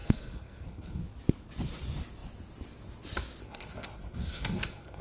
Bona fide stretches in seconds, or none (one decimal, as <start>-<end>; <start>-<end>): 1.0-3.4